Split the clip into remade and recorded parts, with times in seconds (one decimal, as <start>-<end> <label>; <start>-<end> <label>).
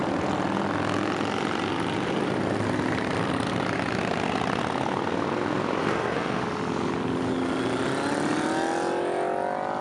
0.0-5.8 recorded; 5.8-6.4 remade; 6.4-9.8 recorded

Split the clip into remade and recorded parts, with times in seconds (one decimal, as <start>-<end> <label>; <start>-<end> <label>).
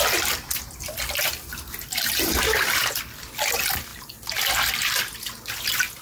0.0-6.0 recorded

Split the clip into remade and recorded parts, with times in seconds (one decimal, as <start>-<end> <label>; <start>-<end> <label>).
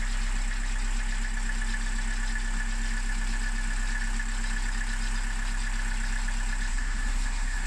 0.0-6.7 recorded; 6.7-7.7 remade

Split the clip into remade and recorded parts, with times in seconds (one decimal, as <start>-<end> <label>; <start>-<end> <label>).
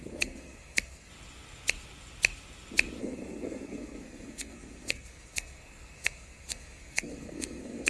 0.0-1.1 remade; 1.1-3.0 recorded; 3.0-7.9 remade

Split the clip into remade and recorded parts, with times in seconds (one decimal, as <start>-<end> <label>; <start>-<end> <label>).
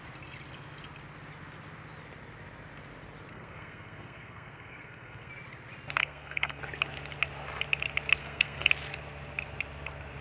0.0-3.3 recorded; 3.3-5.3 remade; 5.3-6.0 recorded; 6.0-6.6 remade; 6.6-8.2 recorded; 8.2-8.7 remade; 8.7-10.2 recorded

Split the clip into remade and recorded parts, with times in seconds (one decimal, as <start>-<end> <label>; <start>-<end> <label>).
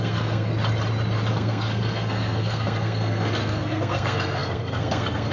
0.0-0.5 remade; 0.5-1.3 recorded; 1.3-5.3 remade